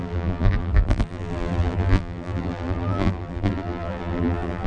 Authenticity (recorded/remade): remade